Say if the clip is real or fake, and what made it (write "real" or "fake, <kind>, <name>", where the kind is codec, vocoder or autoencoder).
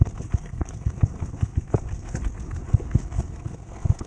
fake, codec, SNAC